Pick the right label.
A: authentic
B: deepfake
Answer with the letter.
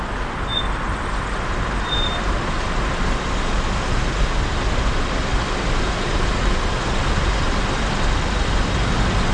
A